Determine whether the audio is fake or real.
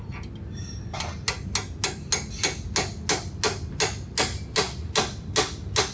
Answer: real